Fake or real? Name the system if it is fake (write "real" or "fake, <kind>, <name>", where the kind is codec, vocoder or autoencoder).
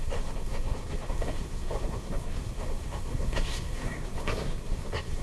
fake, codec, SNAC